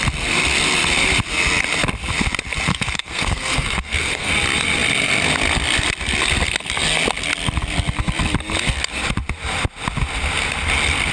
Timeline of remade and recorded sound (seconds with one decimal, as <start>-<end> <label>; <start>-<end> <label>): 0.0-2.7 recorded; 2.7-4.3 remade; 4.3-11.1 recorded